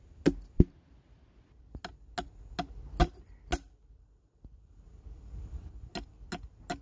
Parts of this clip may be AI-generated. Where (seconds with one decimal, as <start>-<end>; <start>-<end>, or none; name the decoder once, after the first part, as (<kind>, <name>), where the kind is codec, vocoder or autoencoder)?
none